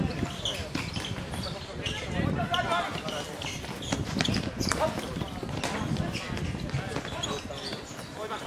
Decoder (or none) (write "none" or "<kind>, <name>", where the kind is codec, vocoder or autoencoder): none